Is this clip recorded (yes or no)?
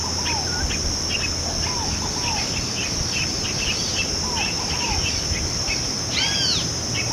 yes